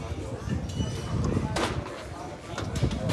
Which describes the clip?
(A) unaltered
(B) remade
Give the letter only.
A